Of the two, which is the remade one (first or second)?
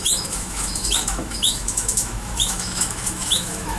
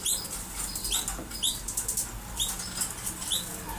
first